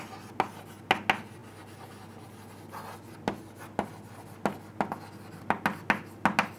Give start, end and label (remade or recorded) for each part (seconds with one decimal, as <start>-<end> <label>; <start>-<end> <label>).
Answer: 0.0-6.6 recorded